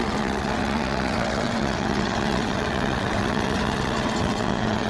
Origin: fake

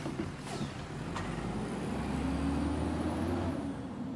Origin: real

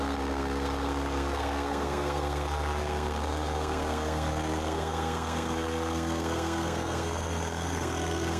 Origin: fake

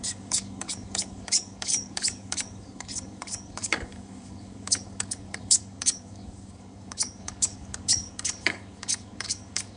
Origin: fake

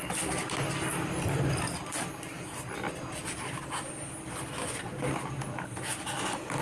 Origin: real